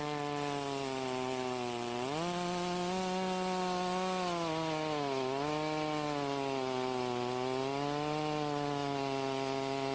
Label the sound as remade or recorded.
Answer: recorded